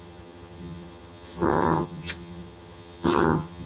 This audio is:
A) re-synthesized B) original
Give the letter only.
A